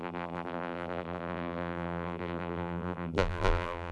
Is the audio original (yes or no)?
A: no